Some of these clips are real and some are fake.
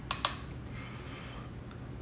real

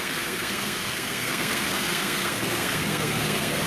fake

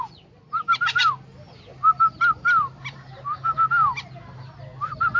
real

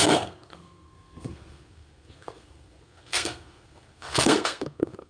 fake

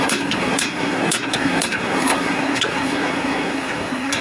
fake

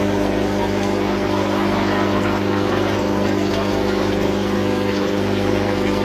fake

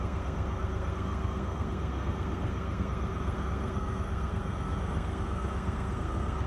fake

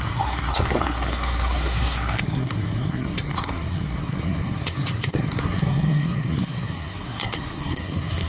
fake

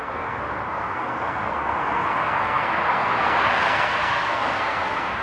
fake